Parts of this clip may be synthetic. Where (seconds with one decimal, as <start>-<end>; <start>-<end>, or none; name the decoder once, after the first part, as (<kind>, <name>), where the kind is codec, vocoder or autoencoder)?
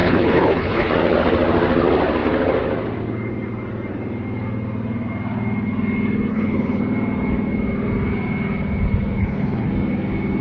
0.0-0.9 (codec, HILCodec); 6.3-6.8; 9.2-9.7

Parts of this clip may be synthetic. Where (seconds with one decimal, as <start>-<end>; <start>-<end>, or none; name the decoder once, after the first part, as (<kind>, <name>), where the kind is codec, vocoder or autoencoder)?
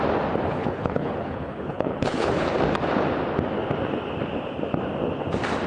0.6-2.5 (codec, HILCodec)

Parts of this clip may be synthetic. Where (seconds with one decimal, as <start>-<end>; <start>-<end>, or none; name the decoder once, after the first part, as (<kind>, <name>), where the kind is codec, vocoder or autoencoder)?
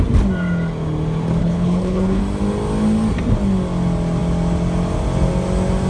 1.4-2.2 (codec, HILCodec)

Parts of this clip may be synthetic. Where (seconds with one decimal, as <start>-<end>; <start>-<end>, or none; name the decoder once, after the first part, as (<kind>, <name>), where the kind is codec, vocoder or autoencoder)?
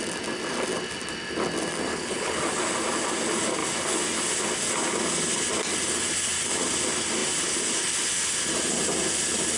1.9-2.4 (codec, HILCodec)